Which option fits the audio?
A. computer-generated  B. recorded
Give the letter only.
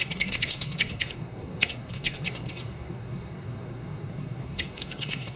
A